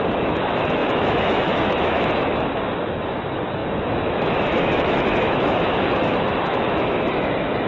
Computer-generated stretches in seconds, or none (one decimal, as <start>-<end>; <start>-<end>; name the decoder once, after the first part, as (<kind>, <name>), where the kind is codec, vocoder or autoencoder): 0.0-7.7 (autoencoder, DAC-VAE)